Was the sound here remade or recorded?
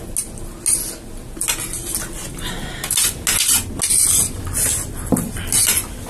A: recorded